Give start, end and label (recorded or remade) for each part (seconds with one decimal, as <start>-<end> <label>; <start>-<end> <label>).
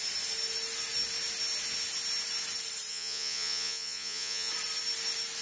0.0-2.9 recorded; 2.9-4.5 remade; 4.5-5.4 recorded